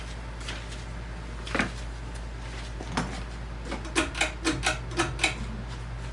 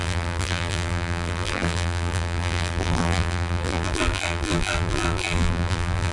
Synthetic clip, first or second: second